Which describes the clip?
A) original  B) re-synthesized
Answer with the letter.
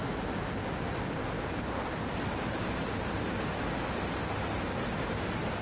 A